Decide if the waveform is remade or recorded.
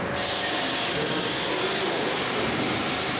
recorded